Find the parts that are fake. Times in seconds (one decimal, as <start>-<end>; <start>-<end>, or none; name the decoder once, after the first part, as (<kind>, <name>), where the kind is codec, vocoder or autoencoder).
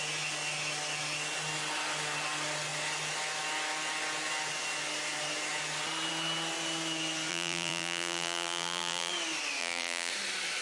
7.3-9.1 (vocoder, BigVGAN v2); 9.6-10.1